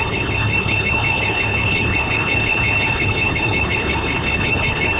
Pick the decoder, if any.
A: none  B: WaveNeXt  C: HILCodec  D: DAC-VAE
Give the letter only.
C